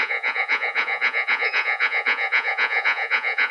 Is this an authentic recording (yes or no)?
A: no